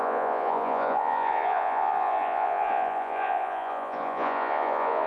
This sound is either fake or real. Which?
fake